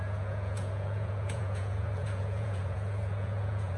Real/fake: fake